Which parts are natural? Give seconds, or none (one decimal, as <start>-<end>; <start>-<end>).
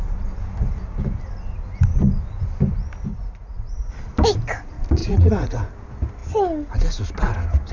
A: 0.0-3.1; 3.9-5.0; 5.7-7.7